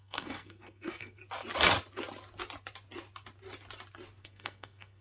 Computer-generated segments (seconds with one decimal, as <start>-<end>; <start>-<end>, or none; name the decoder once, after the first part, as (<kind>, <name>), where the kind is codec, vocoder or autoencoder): 0.0-1.2 (codec, SNAC); 4.2-5.0

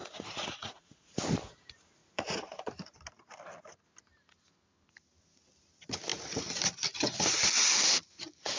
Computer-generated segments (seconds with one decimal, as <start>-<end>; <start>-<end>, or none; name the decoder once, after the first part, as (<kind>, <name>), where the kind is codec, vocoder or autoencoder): 0.0-1.2 (vocoder, Vocos); 2.0-2.8

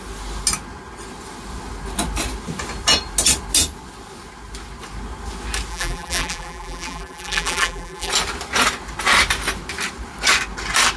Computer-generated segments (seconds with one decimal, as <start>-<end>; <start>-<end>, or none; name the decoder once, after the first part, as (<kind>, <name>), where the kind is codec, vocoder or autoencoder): 5.7-8.1 (vocoder, BigVGAN v2)

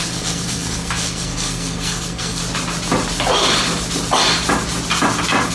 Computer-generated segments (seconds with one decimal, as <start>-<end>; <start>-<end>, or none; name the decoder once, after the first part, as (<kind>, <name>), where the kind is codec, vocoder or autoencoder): 0.0-2.4 (codec, SNAC)